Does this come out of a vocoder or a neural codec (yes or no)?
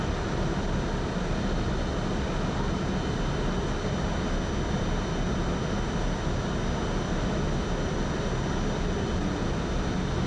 no